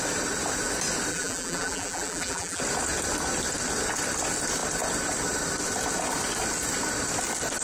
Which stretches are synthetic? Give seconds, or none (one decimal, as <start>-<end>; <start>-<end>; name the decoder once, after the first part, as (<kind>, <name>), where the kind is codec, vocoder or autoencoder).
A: 1.1-2.6 (vocoder, BigVGAN v2)